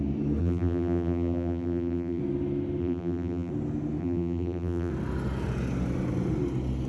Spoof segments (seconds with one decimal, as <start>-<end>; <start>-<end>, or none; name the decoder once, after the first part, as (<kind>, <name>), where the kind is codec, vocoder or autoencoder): 0.4-2.2 (vocoder, BigVGAN v2); 2.8-3.5; 4.0-4.9

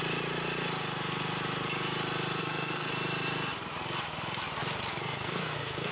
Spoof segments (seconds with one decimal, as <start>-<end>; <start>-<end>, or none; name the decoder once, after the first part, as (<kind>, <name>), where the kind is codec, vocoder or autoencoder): 2.4-2.9 (codec, SNAC); 4.9-5.9

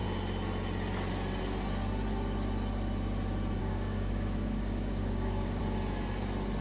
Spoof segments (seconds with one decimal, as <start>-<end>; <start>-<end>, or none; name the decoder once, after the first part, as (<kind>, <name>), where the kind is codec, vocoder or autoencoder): 3.6-5.6 (codec, DAC)

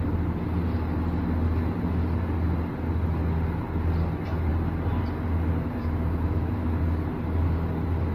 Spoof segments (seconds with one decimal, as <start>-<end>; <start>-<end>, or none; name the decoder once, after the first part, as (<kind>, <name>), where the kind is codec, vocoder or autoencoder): 5.8-6.5 (autoencoder, DAC-VAE)

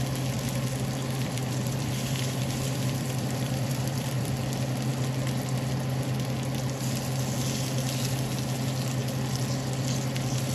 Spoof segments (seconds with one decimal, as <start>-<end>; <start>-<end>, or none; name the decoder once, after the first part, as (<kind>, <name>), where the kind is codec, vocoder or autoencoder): 1.0-4.4 (vocoder, BigVGAN v2)

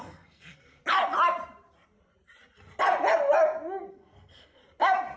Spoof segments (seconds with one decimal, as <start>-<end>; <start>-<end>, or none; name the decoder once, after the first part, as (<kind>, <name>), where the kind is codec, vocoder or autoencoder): 0.0-0.8 (codec, SNAC); 3.9-4.6